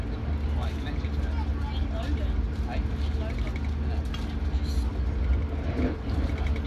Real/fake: real